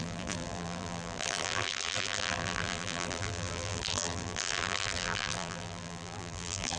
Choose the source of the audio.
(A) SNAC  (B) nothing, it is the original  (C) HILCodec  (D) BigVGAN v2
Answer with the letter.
D